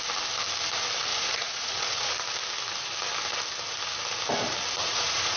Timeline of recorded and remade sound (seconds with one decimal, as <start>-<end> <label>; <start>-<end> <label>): 0.0-1.1 recorded; 1.1-2.1 remade; 2.1-4.8 recorded; 4.8-5.4 remade